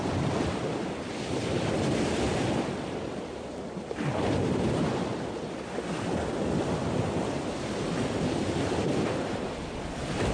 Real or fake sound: real